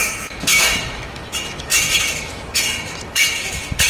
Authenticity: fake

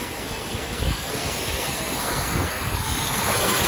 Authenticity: fake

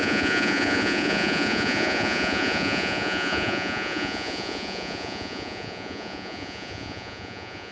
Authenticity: fake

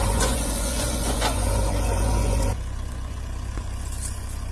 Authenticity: fake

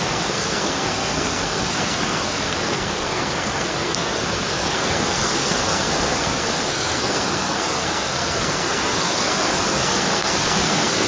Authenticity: fake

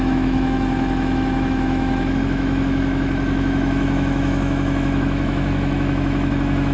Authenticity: fake